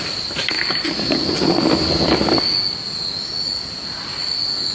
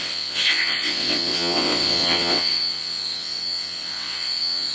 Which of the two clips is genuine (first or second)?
first